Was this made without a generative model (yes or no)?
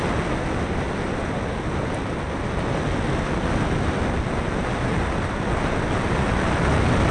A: yes